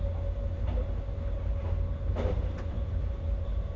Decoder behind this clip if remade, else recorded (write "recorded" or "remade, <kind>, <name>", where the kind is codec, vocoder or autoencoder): recorded